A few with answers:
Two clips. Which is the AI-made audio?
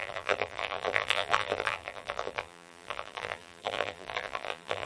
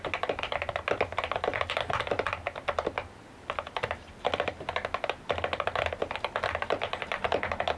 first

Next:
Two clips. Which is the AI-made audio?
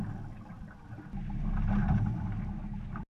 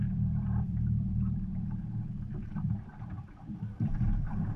second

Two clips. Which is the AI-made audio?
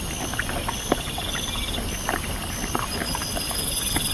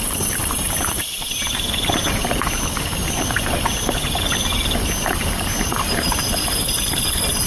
second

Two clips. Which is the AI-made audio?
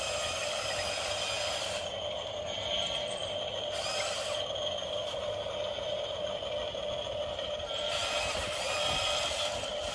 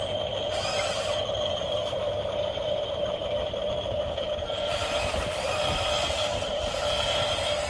second